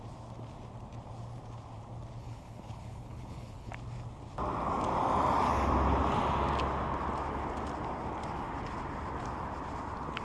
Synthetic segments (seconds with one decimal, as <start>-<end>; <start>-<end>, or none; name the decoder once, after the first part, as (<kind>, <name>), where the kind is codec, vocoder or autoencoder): 2.2-3.7 (codec, HILCodec)